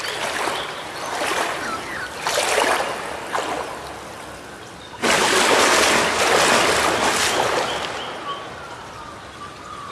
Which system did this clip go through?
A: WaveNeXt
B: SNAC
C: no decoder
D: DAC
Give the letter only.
C